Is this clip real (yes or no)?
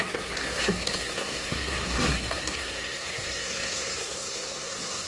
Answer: no